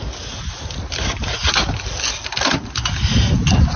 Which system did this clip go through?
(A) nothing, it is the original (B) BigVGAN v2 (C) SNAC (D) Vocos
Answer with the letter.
A